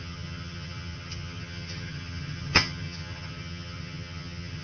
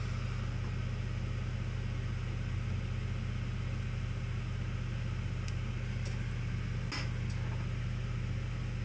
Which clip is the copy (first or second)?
first